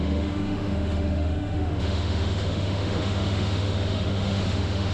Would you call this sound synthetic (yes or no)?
yes